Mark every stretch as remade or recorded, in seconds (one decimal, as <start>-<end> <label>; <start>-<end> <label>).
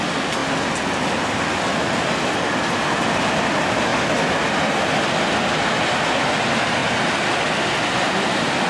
0.0-0.4 remade; 0.4-3.2 recorded; 3.2-3.9 remade; 3.9-6.1 recorded; 6.1-6.8 remade; 6.8-8.1 recorded; 8.1-8.7 remade